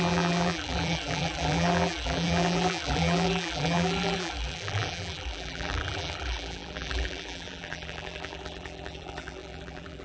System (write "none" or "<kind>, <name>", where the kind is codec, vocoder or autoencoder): vocoder, BigVGAN v2